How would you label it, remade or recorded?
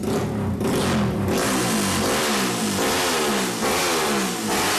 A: recorded